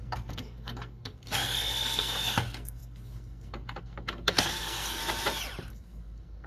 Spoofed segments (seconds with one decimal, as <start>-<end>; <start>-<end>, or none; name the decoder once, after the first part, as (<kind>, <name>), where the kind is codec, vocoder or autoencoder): 0.0-5.0 (codec, SNAC); 5.7-6.5